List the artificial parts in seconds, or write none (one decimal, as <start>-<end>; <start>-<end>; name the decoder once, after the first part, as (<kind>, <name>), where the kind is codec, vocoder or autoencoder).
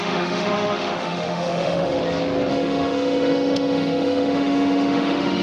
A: 0.0-2.0 (autoencoder, DAC-VAE); 2.5-5.4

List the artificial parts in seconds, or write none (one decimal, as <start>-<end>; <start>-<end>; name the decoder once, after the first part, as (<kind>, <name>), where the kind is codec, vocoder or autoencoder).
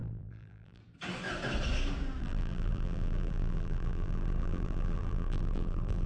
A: 0.0-0.8 (vocoder, BigVGAN v2); 2.2-6.1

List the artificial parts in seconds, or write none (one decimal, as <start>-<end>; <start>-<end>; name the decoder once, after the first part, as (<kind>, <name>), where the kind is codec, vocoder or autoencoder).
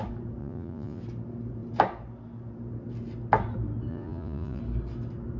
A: 0.4-1.0 (vocoder, Vocos); 3.9-4.6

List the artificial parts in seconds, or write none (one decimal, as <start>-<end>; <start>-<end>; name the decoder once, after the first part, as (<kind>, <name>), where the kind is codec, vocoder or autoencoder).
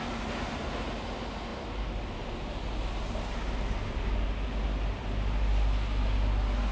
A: none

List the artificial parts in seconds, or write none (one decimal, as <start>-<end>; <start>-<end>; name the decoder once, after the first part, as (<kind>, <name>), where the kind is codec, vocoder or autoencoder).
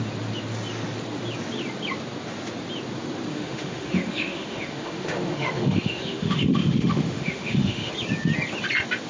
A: 3.3-7.9 (autoencoder, DAC-VAE)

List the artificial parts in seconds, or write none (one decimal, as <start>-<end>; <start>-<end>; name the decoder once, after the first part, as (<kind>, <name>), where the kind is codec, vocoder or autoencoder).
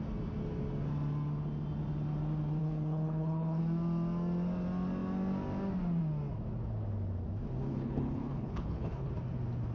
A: 2.6-3.6 (codec, HILCodec); 7.7-9.1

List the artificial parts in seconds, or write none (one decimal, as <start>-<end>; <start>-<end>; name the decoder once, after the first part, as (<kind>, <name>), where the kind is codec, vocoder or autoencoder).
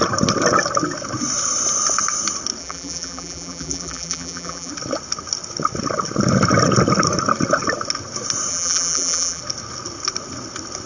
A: 2.6-4.7 (vocoder, BigVGAN v2); 8.5-9.4